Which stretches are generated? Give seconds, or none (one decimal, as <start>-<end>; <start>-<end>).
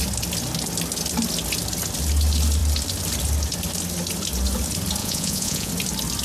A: 5.0-5.7